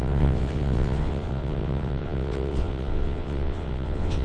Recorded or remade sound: remade